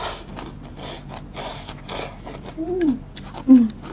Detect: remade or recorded recorded